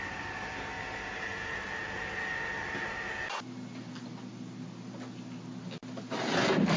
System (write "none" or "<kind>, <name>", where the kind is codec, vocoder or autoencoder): none